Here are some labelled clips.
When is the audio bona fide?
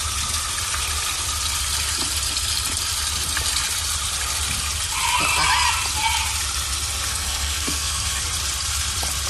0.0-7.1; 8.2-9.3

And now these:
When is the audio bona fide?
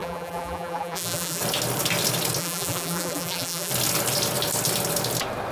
1.4-2.4; 3.7-5.5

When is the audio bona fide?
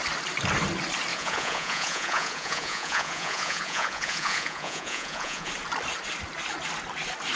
0.0-1.1; 5.5-7.4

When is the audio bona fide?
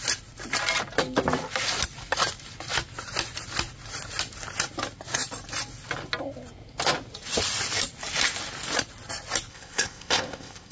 0.0-9.5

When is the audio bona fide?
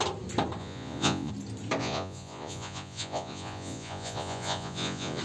0.0-0.6; 1.3-1.8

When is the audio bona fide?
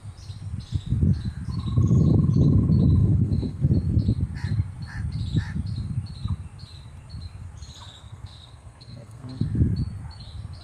0.0-3.0; 3.7-8.0; 9.5-10.6